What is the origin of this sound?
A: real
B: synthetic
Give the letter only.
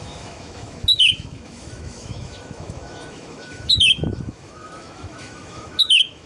B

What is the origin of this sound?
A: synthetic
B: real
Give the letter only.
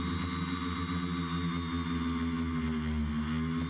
B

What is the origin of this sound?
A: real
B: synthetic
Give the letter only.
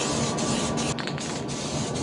A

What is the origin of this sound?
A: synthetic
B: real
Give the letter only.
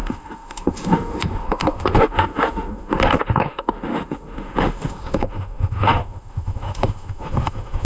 A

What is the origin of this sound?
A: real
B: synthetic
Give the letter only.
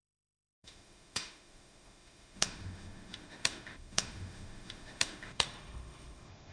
B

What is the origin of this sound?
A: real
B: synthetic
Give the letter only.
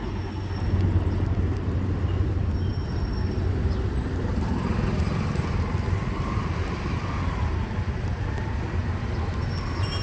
A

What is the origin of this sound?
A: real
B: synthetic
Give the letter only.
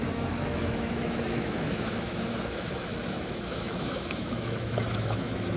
B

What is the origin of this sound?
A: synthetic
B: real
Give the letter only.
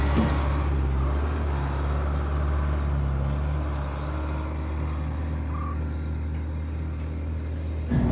B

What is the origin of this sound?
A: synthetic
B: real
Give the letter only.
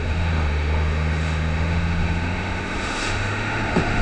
A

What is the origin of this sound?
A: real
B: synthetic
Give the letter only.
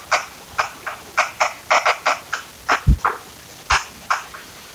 A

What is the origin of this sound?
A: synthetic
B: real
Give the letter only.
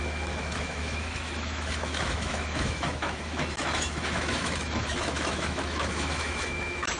A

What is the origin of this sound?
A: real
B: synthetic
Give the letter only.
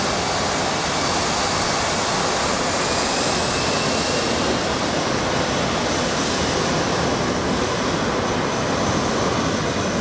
A